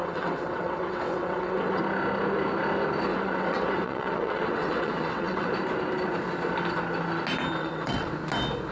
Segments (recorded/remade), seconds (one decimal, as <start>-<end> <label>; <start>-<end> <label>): 0.0-1.8 remade; 1.8-3.1 recorded; 3.1-5.5 remade; 5.5-7.6 recorded; 7.6-8.1 remade; 8.1-8.7 recorded